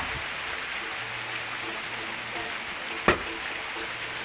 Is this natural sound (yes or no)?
yes